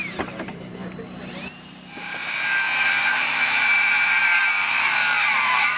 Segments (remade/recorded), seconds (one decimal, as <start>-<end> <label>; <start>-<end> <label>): 0.0-0.8 remade; 0.8-2.0 recorded; 2.0-5.8 remade

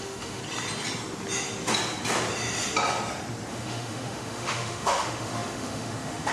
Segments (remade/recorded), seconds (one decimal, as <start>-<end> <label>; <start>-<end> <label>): 0.0-0.4 remade; 0.4-3.5 recorded; 3.5-6.3 remade